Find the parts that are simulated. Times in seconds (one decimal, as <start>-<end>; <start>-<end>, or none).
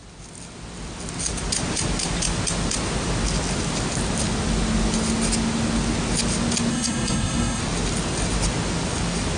6.7-7.6